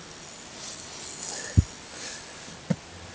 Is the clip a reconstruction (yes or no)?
no